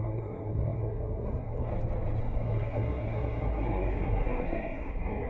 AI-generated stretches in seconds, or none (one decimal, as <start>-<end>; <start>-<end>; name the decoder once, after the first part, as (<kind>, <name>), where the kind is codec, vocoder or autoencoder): 0.0-1.7 (codec, SNAC); 2.2-5.3